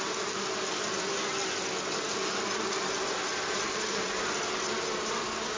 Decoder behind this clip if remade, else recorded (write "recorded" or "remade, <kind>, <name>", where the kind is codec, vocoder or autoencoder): recorded